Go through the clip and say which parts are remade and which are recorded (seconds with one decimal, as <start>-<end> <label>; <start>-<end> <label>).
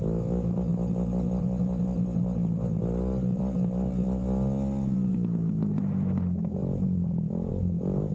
0.0-0.7 remade; 0.7-5.1 recorded; 5.1-8.1 remade